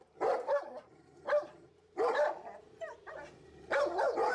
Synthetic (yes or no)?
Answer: yes